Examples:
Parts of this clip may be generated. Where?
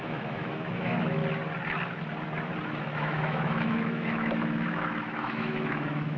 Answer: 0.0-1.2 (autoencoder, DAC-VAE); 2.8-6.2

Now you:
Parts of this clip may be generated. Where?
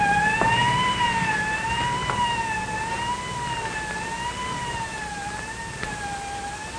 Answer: none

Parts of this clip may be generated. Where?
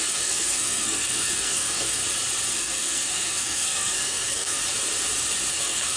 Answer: 0.0-2.0 (codec, SNAC); 2.5-4.6; 5.5-6.0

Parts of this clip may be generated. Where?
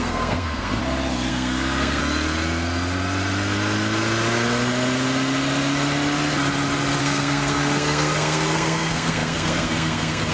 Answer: 0.0-0.8 (codec, SNAC); 1.3-2.0; 7.0-10.3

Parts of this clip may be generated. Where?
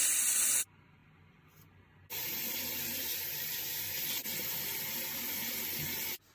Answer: none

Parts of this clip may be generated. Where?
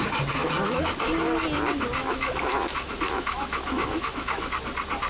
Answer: 0.4-0.9 (autoencoder, DAC-VAE); 2.0-4.5